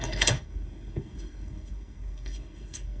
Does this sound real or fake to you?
fake